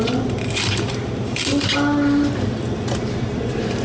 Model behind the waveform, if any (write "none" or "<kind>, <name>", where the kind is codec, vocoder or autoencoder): none